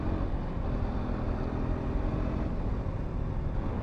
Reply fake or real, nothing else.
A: real